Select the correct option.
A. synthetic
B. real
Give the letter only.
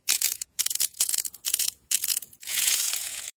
A